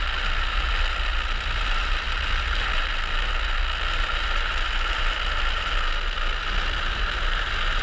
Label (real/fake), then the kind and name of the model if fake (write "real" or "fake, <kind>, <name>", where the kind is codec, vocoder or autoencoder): real